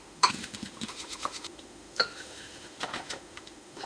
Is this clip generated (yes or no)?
yes